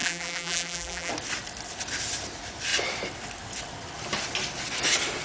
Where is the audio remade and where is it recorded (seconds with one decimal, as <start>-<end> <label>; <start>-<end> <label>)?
0.0-1.1 remade; 1.1-5.2 recorded